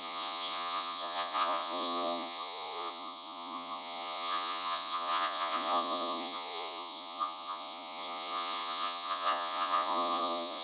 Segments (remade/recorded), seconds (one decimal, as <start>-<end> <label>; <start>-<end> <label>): 0.0-10.6 remade